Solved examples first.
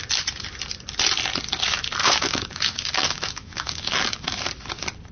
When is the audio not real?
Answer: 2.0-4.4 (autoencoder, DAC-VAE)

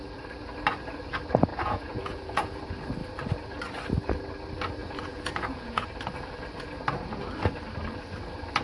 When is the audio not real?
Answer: 1.5-2.6 (vocoder, Vocos); 4.8-5.9